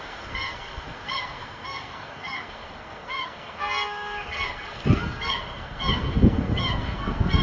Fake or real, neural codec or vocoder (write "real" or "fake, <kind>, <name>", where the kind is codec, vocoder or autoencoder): fake, codec, SNAC